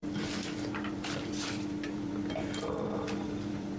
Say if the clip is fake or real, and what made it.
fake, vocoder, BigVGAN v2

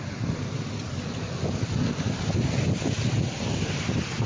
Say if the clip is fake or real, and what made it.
real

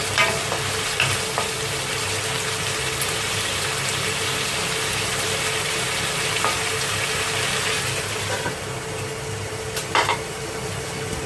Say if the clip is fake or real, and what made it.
fake, vocoder, BigVGAN v2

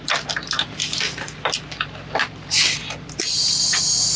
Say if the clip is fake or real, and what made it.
real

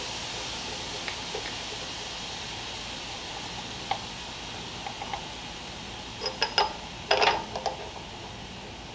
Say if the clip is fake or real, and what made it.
real